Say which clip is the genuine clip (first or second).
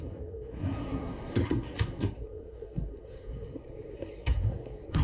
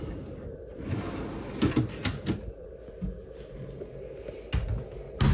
second